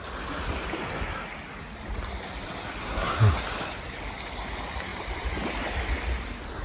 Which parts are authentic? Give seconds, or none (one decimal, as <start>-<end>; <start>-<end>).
0.0-2.8; 3.3-6.6